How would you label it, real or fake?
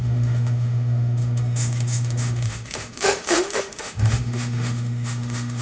fake